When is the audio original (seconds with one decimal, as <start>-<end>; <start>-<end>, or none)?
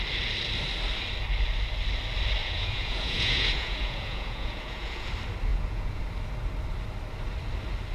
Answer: 0.0-2.4; 5.1-5.5; 6.0-7.9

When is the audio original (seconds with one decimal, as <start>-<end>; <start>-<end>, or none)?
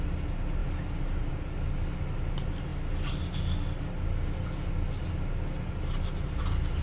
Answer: 0.0-6.8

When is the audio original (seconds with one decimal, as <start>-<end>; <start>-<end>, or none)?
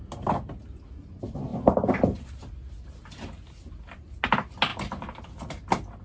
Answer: 0.0-6.0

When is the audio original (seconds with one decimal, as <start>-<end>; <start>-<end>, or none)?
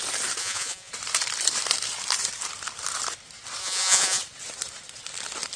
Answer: 0.0-0.4; 0.9-3.6; 4.2-5.6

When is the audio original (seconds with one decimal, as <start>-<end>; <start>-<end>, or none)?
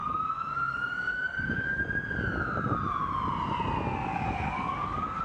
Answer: 1.8-4.1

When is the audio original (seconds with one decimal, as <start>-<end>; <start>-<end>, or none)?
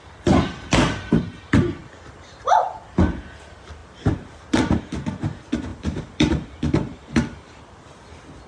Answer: 0.0-1.8; 3.0-5.7; 7.6-8.5